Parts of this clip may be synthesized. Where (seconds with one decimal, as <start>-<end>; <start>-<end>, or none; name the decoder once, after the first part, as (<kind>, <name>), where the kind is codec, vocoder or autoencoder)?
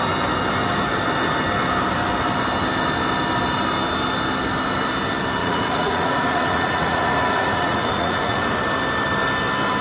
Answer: 5.4-8.6 (vocoder, Vocos)